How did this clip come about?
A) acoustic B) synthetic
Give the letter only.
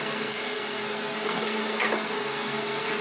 B